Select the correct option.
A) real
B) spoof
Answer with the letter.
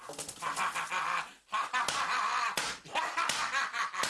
A